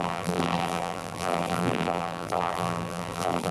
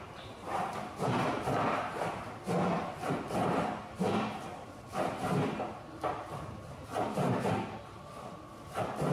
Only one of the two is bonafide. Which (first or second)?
second